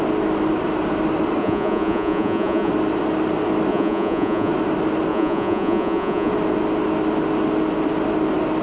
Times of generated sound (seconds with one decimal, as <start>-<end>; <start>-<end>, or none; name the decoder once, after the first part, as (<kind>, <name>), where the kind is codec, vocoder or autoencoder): 1.4-2.7 (vocoder, Vocos); 3.7-4.5; 5.1-6.3